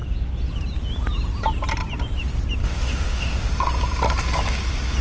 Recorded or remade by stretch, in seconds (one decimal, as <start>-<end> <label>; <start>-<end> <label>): 0.0-2.6 recorded; 2.6-3.5 remade; 3.5-5.0 recorded